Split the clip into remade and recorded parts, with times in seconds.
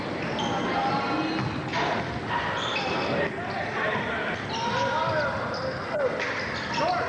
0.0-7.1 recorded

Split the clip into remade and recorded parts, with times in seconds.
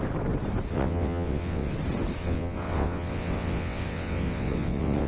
0.0-0.7 recorded; 0.7-1.7 remade; 1.7-2.2 recorded; 2.2-5.1 remade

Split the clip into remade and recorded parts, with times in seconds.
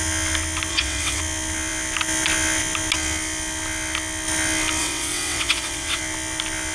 0.0-0.7 recorded; 0.7-1.2 remade; 1.2-4.8 recorded; 4.8-6.0 remade; 6.0-6.7 recorded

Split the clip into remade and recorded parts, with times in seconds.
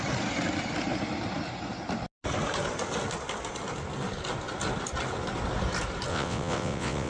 0.0-6.1 recorded; 6.1-7.1 remade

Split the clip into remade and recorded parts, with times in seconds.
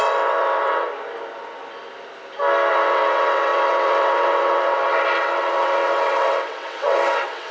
0.0-0.9 remade; 0.9-2.7 recorded; 2.7-7.5 remade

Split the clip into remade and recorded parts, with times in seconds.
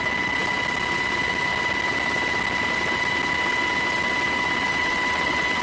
0.0-4.8 recorded; 4.8-5.6 remade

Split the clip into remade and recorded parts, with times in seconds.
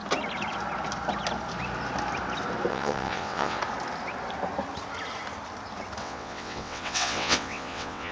0.0-2.7 recorded; 2.7-3.6 remade; 3.6-6.0 recorded; 6.0-8.1 remade